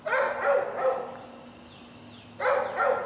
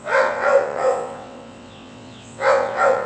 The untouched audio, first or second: first